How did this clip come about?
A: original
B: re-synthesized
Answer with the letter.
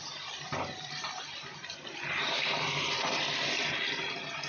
A